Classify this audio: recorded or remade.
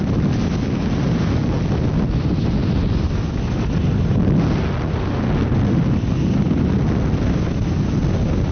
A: recorded